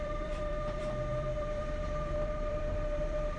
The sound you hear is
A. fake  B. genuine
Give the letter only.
A